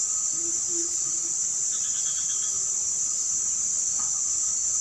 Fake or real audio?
real